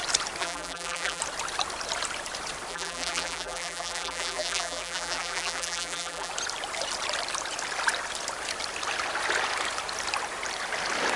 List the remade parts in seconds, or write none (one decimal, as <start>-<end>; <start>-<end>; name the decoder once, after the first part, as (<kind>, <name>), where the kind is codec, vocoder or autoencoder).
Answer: 0.4-1.2 (vocoder, BigVGAN v2); 2.7-6.3